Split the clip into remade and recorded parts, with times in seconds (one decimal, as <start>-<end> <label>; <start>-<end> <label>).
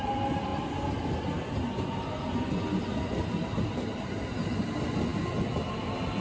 0.0-6.2 recorded